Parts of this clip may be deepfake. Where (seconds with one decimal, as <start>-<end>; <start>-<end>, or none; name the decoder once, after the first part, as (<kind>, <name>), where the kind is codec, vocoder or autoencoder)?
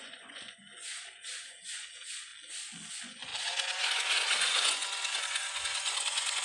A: 0.0-2.3 (vocoder, Vocos); 2.9-6.4